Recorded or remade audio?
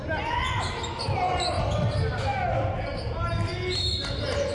recorded